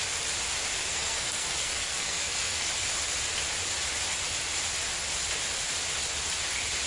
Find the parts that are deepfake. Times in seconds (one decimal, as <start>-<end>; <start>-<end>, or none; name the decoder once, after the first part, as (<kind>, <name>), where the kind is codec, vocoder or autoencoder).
0.7-2.7 (codec, SNAC)